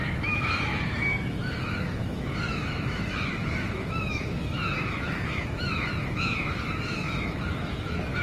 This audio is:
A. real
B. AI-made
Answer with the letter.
B